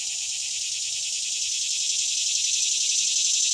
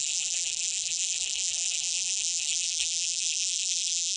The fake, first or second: second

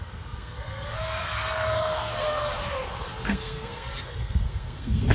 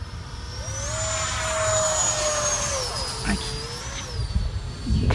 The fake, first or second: first